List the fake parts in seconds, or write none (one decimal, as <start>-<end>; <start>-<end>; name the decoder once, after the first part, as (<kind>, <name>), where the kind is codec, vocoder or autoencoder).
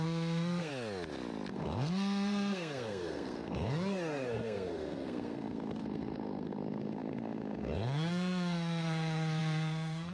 0.0-0.7 (codec, SNAC); 1.5-10.1